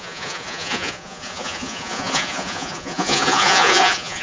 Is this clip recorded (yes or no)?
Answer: no